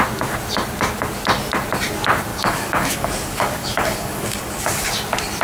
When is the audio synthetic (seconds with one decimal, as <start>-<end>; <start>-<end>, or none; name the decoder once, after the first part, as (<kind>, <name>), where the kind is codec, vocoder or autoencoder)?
2.3-4.9 (codec, DAC)